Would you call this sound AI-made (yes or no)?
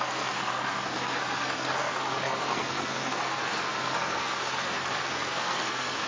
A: yes